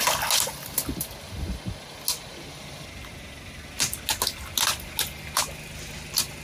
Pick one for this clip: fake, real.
real